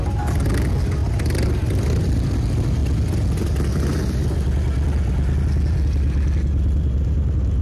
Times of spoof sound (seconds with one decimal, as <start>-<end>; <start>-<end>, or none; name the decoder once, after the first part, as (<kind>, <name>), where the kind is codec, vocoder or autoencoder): 1.0-2.3 (vocoder, BigVGAN v2)

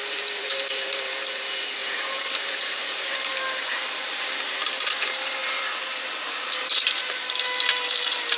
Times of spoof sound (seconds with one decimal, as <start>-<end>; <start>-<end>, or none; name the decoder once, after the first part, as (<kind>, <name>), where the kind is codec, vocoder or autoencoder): 0.0-8.4 (vocoder, BigVGAN v2)